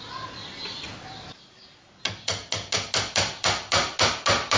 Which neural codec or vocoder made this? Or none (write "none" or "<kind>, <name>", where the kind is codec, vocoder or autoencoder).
none